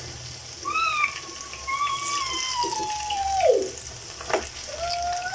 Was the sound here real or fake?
real